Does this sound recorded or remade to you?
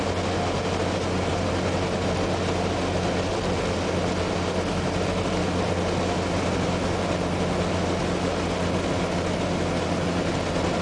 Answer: recorded